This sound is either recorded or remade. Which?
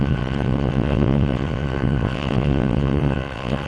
remade